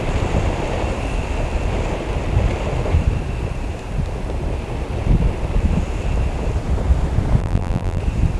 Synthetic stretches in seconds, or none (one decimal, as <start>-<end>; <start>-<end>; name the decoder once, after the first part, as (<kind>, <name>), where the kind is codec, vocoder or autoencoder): 7.4-8.0 (vocoder, BigVGAN v2)